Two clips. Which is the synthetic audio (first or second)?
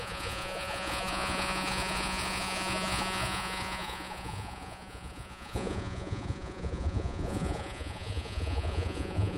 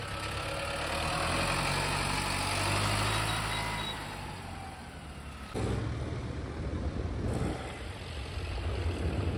first